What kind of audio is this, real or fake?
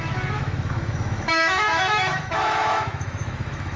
fake